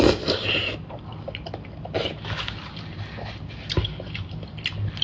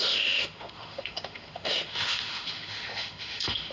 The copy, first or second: second